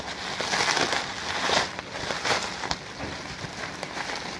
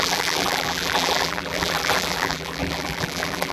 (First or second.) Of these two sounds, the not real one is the second